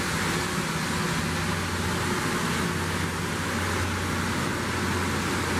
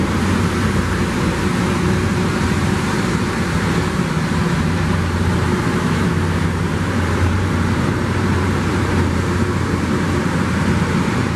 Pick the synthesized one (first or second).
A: second